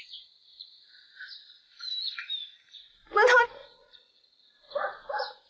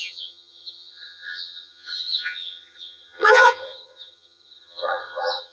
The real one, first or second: first